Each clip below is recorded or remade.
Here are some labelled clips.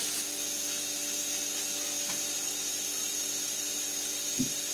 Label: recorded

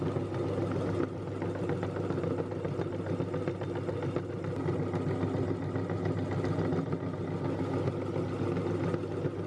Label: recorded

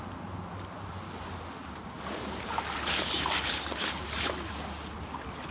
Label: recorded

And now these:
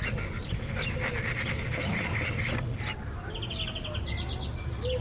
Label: recorded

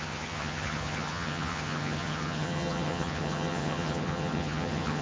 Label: remade